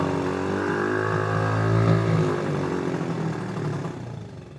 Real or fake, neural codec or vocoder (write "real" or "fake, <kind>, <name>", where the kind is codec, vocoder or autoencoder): real